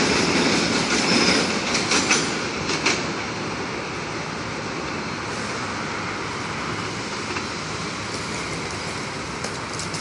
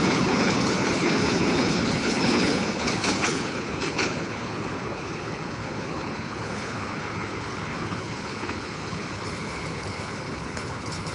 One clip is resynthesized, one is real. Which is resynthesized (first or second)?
second